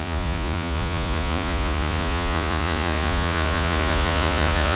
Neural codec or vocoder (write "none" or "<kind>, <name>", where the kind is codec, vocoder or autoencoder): vocoder, Vocos